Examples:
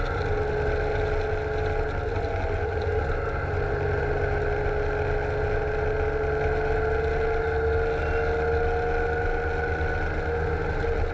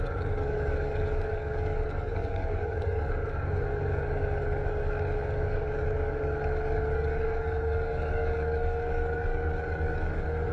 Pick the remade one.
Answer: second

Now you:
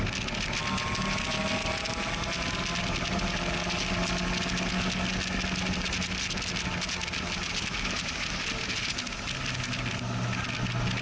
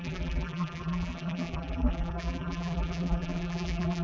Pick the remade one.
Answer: second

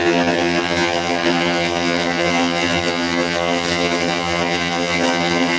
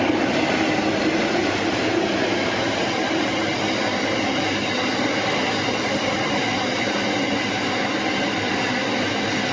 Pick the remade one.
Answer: first